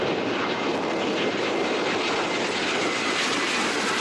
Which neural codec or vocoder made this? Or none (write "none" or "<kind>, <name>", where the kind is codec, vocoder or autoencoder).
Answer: none